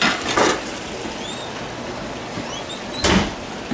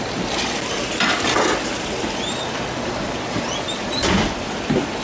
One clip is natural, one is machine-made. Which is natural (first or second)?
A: first